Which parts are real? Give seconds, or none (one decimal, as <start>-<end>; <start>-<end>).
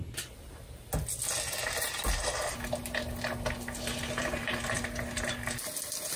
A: 0.0-4.2; 4.8-6.2